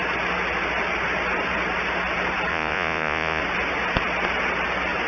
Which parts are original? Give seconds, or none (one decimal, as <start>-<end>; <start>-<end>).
0.0-2.5; 3.4-5.1